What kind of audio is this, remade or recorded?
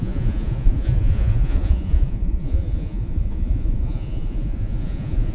remade